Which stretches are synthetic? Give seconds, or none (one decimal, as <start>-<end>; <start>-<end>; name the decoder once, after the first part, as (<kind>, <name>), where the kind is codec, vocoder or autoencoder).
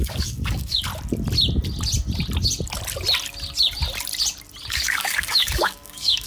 0.0-0.9 (codec, DAC); 4.7-6.3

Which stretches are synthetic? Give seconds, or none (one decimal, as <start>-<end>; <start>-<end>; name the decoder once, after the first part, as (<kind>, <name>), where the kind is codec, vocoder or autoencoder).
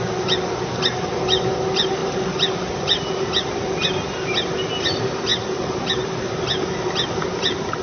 none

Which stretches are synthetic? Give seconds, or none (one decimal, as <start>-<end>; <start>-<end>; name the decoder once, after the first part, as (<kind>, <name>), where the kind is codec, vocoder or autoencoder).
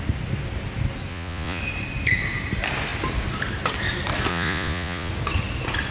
1.1-1.6 (vocoder, Vocos); 4.3-5.1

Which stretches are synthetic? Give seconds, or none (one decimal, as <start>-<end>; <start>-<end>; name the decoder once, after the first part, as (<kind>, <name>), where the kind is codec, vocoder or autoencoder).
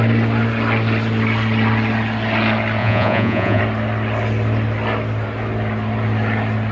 2.8-3.6 (vocoder, Vocos)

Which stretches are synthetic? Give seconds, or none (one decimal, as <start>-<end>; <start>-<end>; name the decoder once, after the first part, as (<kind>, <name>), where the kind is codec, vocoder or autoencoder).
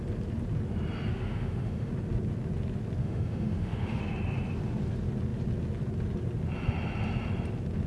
1.1-1.9 (autoencoder, DAC-VAE); 3.0-4.0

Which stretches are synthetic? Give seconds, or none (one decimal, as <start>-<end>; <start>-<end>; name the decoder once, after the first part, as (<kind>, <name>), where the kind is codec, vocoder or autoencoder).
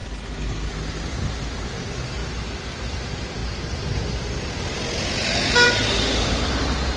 0.0-0.7 (codec, HILCodec)